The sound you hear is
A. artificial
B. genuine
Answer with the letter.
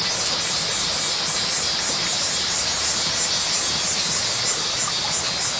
B